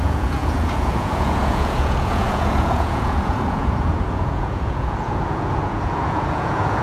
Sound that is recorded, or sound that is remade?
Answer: remade